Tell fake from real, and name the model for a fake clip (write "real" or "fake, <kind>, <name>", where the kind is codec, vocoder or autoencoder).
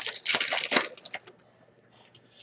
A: real